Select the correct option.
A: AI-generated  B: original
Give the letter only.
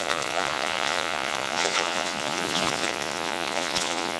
A